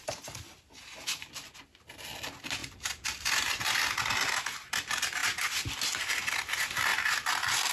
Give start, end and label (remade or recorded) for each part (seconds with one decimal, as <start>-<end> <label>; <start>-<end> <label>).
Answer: 0.0-2.6 recorded; 2.6-4.0 remade; 4.0-7.7 recorded

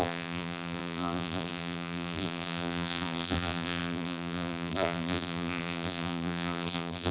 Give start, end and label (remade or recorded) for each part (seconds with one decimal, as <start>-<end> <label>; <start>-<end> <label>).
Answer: 0.0-7.1 remade

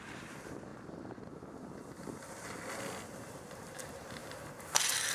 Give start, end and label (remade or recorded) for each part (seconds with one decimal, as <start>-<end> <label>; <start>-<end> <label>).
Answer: 0.0-0.7 remade; 0.7-3.3 recorded; 3.3-4.2 remade; 4.2-5.1 recorded

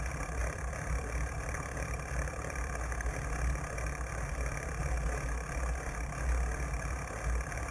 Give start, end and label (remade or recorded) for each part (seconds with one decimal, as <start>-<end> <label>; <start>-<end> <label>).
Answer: 0.0-0.4 recorded; 0.4-3.1 remade; 3.1-7.7 recorded

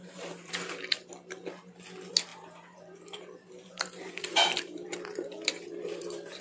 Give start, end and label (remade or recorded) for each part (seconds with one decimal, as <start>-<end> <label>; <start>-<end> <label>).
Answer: 0.0-0.5 remade; 0.5-2.3 recorded; 2.3-6.4 remade